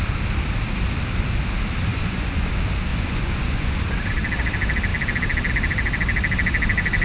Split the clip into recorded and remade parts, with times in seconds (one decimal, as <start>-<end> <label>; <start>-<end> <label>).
0.0-1.9 recorded; 1.9-2.5 remade; 2.5-2.9 recorded; 2.9-4.1 remade; 4.1-7.0 recorded